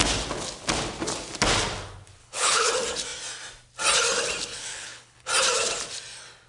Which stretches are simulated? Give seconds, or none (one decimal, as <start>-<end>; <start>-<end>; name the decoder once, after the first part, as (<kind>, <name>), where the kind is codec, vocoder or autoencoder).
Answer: 2.2-2.7 (codec, HILCodec); 4.5-5.3